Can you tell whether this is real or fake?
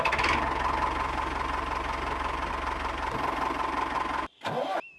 real